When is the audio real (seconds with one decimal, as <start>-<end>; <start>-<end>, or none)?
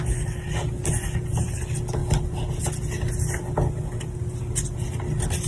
0.0-5.5